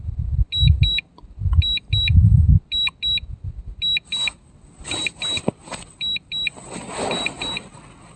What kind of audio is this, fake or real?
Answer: real